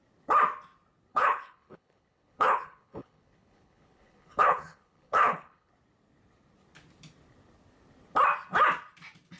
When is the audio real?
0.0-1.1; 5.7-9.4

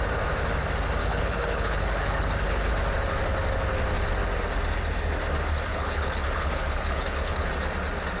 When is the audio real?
0.0-1.0; 2.7-5.7; 7.5-8.2